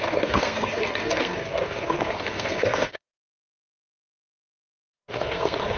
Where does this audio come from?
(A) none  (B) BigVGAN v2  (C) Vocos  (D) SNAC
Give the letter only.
D